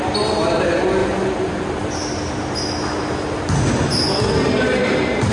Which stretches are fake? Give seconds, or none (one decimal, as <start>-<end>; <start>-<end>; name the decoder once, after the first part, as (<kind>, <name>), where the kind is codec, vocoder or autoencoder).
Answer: none